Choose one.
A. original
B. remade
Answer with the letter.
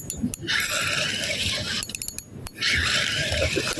A